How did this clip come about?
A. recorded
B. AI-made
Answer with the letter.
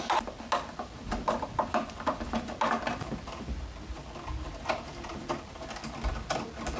A